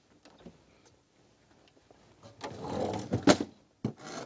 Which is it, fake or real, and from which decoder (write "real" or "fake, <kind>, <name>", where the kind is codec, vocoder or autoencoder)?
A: real